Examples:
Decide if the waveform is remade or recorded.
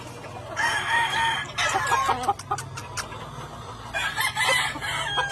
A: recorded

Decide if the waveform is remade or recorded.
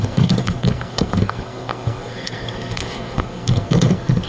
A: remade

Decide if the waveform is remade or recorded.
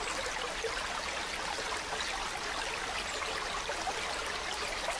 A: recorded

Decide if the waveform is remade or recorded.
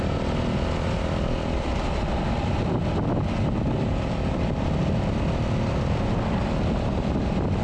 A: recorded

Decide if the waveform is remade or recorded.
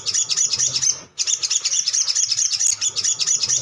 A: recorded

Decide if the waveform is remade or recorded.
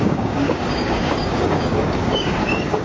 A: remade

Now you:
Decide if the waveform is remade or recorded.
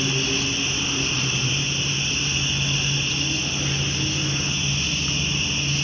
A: recorded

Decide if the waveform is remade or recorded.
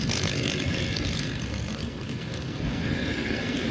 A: remade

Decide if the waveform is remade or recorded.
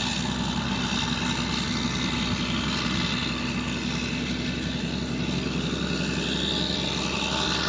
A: recorded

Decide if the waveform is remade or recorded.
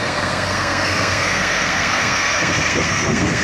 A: remade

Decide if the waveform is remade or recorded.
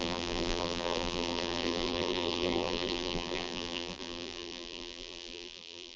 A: remade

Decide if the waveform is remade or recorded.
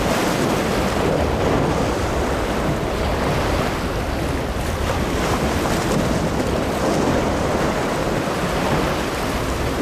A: recorded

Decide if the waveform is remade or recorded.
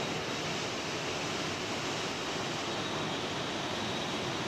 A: recorded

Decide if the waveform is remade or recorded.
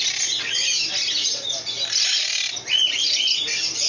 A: recorded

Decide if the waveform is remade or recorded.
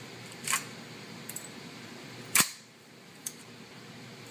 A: remade